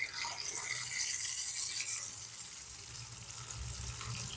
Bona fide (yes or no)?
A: yes